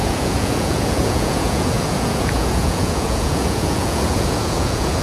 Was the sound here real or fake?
fake